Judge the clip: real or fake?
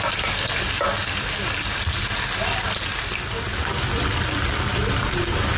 real